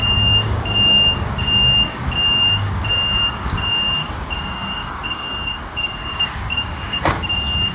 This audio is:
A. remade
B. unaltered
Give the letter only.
A